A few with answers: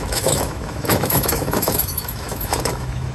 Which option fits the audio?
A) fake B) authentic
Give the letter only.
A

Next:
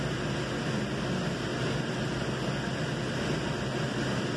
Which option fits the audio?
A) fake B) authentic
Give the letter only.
B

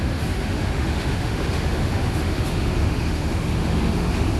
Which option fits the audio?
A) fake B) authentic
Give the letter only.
A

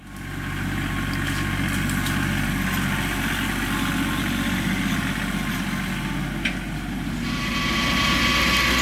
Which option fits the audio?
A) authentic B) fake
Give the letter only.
A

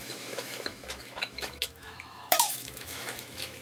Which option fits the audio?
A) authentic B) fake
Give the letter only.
B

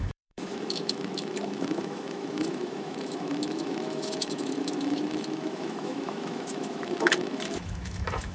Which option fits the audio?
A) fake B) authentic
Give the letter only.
A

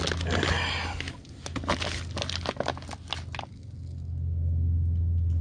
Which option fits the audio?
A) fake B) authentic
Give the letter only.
B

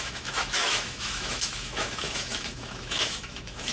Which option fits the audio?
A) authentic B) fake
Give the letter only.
B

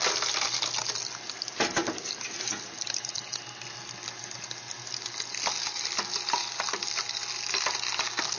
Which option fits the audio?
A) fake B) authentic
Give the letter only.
B